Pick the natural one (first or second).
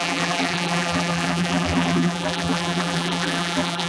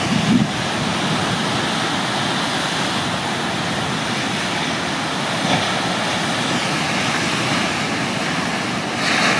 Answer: second